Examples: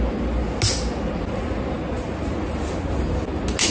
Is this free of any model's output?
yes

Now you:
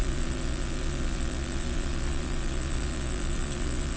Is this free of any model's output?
no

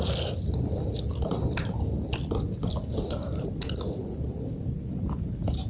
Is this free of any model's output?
yes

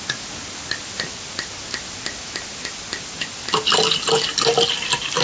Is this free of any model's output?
yes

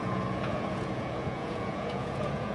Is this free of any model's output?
no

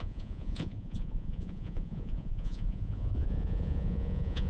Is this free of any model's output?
no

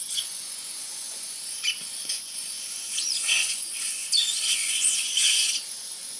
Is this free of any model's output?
no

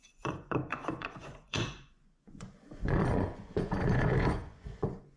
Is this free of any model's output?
no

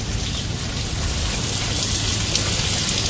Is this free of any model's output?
yes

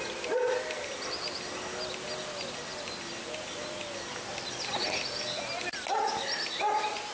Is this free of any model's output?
yes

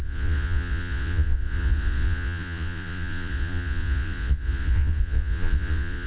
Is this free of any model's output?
no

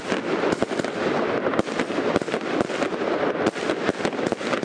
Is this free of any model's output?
yes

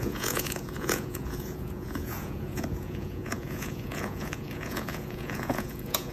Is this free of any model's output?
no